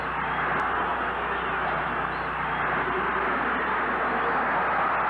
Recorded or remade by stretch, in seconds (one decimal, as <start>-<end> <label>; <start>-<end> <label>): 0.0-5.1 recorded